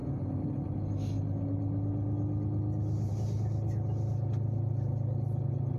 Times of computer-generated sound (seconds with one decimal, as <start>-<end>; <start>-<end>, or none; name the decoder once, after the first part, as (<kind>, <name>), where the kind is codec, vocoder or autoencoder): none